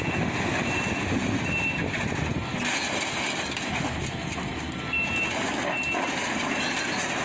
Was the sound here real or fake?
real